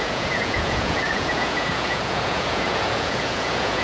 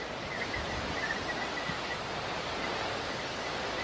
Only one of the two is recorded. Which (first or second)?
second